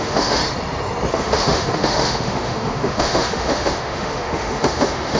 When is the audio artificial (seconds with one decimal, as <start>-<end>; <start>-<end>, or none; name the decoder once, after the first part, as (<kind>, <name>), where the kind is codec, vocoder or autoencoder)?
0.0-0.4 (autoencoder, DAC-VAE); 1.1-5.2